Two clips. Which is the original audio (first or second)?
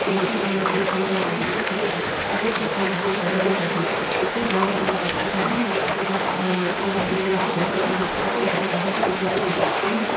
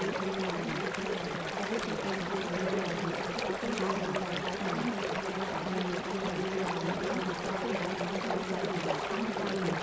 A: second